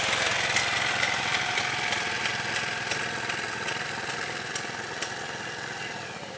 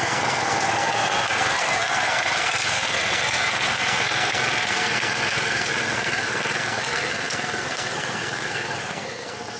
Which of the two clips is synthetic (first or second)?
second